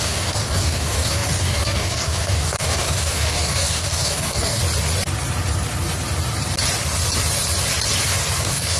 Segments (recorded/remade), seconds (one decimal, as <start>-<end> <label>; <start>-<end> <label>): 0.0-4.6 remade; 4.6-8.4 recorded; 8.4-8.8 remade